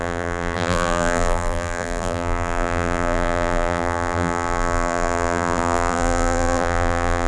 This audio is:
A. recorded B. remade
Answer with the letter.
B